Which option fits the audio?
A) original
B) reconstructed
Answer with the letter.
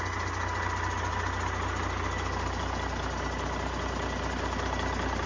A